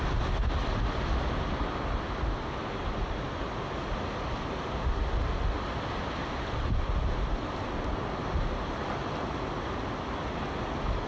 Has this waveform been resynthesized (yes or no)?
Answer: no